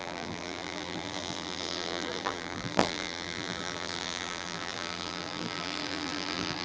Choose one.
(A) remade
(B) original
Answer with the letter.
A